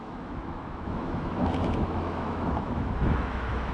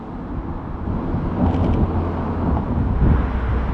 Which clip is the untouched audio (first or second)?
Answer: second